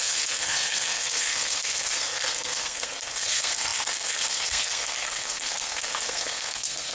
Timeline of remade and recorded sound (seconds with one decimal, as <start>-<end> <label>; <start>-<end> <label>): 0.0-6.9 remade